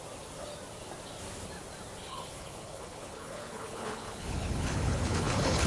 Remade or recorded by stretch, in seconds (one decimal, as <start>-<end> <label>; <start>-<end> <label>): 0.0-2.1 recorded; 2.1-5.7 remade